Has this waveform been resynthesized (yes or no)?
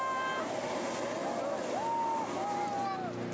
no